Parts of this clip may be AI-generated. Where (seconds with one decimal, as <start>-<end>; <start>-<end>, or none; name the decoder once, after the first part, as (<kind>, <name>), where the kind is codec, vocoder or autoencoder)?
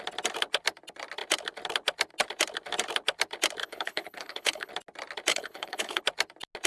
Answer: 3.6-4.7 (codec, HILCodec); 5.3-6.0